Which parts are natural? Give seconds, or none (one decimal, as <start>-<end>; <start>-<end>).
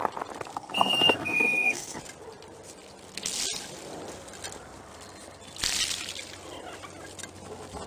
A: 0.0-0.5; 2.0-7.9